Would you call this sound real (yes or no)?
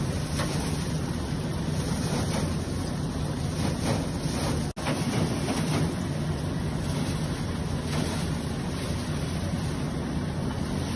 yes